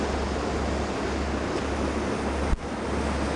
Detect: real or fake real